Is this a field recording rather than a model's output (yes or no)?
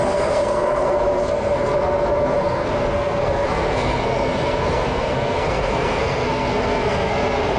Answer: no